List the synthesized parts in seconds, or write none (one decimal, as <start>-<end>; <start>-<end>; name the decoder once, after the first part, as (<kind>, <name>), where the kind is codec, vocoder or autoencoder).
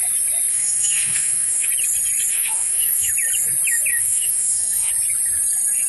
0.5-1.7 (autoencoder, DAC-VAE); 2.3-3.1; 3.9-4.9